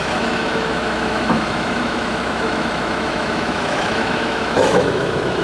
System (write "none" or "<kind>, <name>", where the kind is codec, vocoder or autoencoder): autoencoder, DAC-VAE